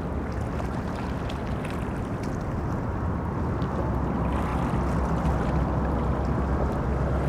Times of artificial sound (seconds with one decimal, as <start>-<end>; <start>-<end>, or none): none